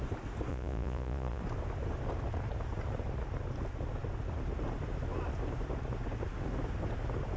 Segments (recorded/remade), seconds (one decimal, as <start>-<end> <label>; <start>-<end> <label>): 0.0-0.5 recorded; 0.5-1.4 remade; 1.4-7.4 recorded